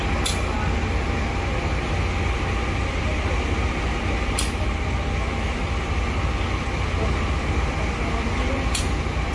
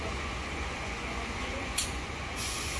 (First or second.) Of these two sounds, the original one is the first